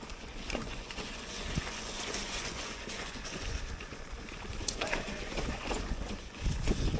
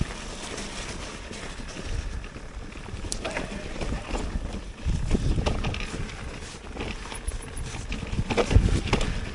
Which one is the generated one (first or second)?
first